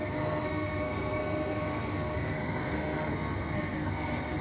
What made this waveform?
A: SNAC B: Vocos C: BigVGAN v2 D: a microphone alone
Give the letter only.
A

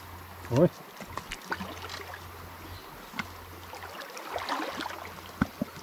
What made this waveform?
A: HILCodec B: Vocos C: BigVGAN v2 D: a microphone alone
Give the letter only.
D